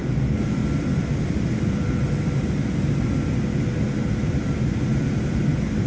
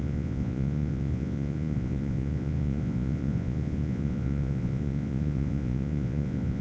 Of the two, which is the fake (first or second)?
second